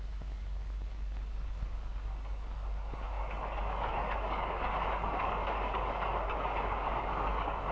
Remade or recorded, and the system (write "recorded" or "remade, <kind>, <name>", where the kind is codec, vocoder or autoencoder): remade, codec, DAC